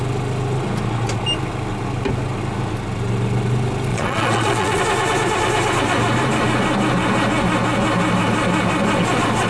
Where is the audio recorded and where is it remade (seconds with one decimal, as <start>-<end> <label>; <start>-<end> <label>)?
0.0-3.9 recorded; 3.9-4.8 remade; 4.8-9.5 recorded